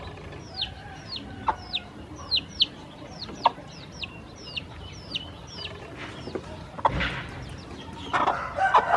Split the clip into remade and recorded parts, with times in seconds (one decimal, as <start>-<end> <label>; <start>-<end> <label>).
0.0-9.0 recorded